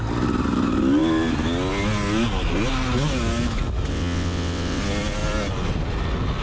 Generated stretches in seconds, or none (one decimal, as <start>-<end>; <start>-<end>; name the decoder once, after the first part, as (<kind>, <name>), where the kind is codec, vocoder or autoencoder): 3.9-4.8 (vocoder, WaveNeXt)